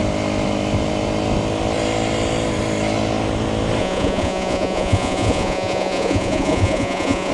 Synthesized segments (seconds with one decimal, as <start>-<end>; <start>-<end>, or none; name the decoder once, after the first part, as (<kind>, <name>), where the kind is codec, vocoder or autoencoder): 3.8-7.3 (vocoder, Vocos)